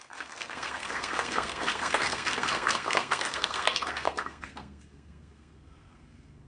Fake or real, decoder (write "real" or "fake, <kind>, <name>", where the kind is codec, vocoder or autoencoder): fake, codec, SNAC